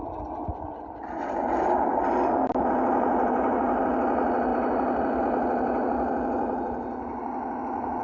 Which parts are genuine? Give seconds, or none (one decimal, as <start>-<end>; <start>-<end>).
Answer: 0.0-2.5; 3.9-4.5; 5.2-6.5; 7.2-8.0